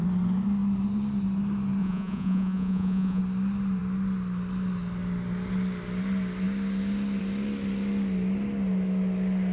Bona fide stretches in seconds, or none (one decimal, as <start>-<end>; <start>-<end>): 0.0-1.8; 3.2-9.5